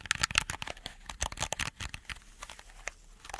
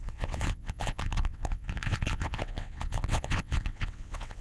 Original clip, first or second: first